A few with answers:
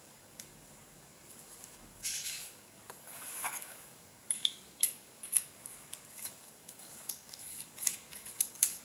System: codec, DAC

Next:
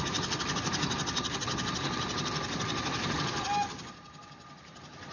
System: none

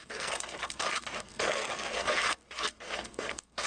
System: codec, SNAC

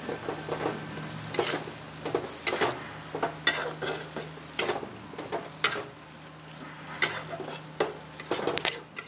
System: none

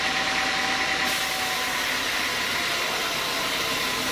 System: none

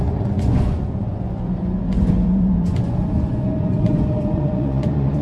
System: vocoder, Vocos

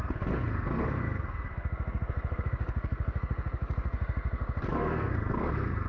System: codec, SNAC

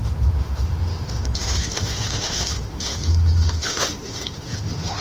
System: autoencoder, DAC-VAE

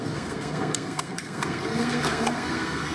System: codec, SNAC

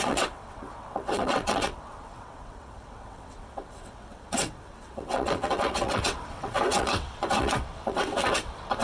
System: vocoder, WaveNeXt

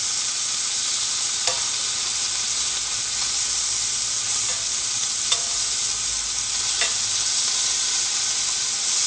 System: none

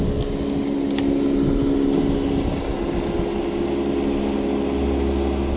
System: none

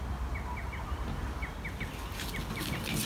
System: none